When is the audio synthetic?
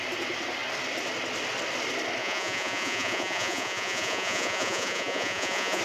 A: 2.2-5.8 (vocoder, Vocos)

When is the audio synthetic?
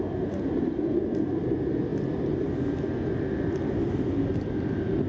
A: none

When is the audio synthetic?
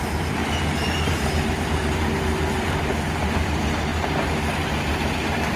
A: 0.0-0.4 (vocoder, BigVGAN v2); 1.1-3.9; 4.6-5.6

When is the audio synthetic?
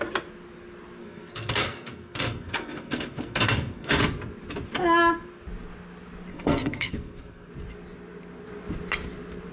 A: 1.0-3.9 (codec, SNAC); 6.3-7.5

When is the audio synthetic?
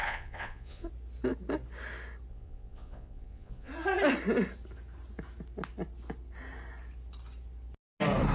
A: 0.0-0.9 (vocoder, Vocos); 2.3-3.7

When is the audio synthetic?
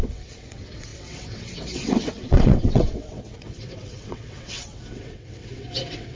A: 0.0-6.2 (vocoder, WaveNeXt)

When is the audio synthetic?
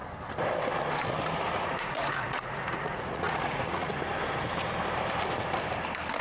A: 1.5-3.9 (vocoder, Vocos)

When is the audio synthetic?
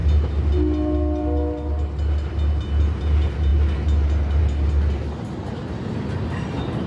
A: none